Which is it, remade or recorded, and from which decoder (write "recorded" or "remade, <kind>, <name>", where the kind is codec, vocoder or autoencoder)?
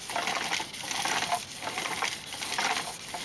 recorded